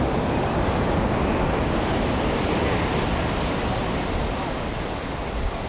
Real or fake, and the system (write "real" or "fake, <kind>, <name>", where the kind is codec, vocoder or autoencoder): real